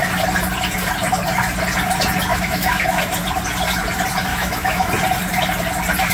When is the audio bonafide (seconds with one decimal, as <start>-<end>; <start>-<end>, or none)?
0.0-2.3; 3.0-4.3; 4.9-6.1